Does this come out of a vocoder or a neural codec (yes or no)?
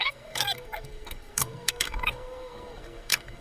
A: yes